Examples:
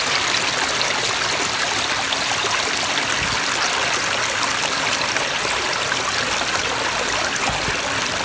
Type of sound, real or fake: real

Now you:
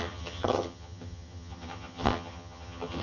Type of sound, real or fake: fake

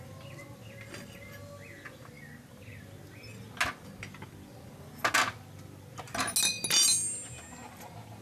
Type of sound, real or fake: real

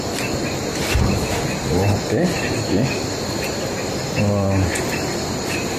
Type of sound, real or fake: real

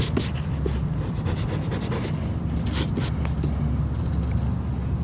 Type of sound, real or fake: real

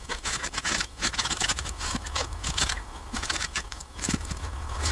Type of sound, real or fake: fake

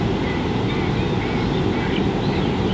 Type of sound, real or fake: real